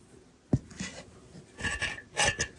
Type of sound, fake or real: real